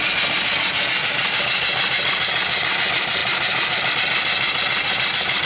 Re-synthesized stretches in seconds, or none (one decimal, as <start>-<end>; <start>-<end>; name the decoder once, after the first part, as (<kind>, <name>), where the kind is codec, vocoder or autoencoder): none